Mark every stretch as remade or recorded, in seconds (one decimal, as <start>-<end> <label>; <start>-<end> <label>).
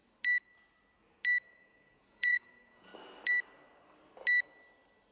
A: 0.0-1.4 recorded; 1.4-2.9 remade; 2.9-5.1 recorded